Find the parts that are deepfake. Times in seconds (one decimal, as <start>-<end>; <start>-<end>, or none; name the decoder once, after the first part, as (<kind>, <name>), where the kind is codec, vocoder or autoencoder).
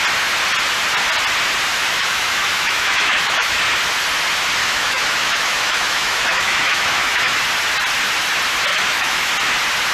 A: 1.7-3.6 (autoencoder, DAC-VAE); 4.6-7.4; 8.7-9.3